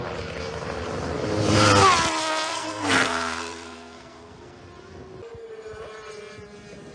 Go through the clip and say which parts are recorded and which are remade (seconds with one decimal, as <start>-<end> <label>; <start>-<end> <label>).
0.0-2.2 recorded; 2.2-4.6 remade; 4.6-6.9 recorded